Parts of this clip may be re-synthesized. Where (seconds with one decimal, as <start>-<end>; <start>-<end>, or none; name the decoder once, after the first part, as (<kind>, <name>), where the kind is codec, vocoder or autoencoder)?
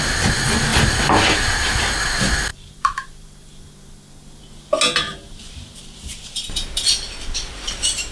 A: 0.7-1.8 (vocoder, BigVGAN v2); 2.5-3.1; 5.1-8.1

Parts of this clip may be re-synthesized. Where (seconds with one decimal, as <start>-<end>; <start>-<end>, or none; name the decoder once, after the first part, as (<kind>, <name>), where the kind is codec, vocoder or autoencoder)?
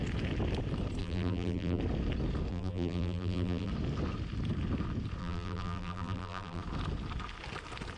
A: 1.0-1.8 (vocoder, BigVGAN v2); 2.5-3.7; 5.2-6.6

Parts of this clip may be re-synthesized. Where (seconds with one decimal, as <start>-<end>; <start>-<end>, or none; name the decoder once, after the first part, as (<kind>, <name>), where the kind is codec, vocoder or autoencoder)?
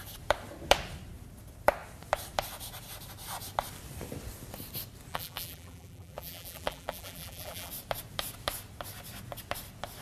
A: 5.1-7.7 (vocoder, BigVGAN v2)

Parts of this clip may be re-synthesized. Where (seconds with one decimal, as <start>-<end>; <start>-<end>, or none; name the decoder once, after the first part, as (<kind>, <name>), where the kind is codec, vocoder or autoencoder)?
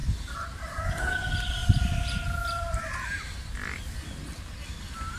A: 1.6-3.9 (vocoder, BigVGAN v2)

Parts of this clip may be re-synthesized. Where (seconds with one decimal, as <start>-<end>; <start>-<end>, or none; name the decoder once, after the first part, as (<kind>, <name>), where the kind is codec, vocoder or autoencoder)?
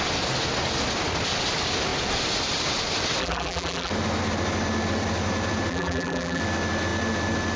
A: 3.2-3.9 (vocoder, BigVGAN v2); 5.7-6.4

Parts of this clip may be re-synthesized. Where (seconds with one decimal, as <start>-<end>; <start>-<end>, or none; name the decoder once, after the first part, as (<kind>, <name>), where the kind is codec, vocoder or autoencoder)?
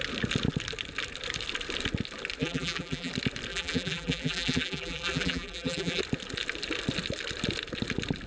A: 2.4-3.1 (vocoder, BigVGAN v2); 3.5-6.0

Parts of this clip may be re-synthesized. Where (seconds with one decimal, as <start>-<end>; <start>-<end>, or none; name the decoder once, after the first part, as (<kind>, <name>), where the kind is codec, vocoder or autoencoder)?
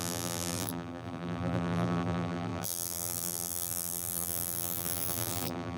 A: 0.0-5.8 (vocoder, BigVGAN v2)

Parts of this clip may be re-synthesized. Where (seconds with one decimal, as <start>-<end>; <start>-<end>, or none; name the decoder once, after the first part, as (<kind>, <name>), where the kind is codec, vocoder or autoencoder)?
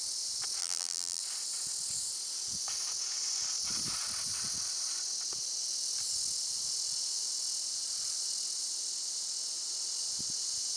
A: 0.6-1.2 (vocoder, BigVGAN v2)